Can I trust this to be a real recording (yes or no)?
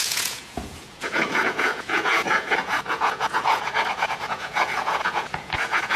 no